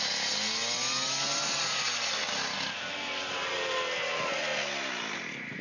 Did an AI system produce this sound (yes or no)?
no